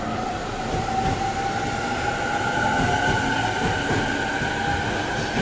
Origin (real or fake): real